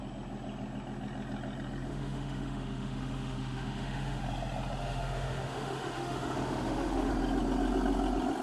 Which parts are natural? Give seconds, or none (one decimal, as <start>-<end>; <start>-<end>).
0.0-1.9; 4.2-4.8; 7.1-8.4